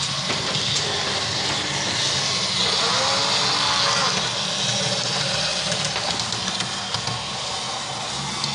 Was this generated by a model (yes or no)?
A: no